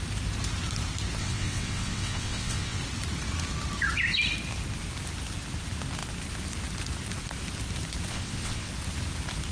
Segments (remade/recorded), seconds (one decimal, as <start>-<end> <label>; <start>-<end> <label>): 0.0-1.2 recorded; 1.2-2.8 remade; 2.8-8.1 recorded; 8.1-8.7 remade; 8.7-9.5 recorded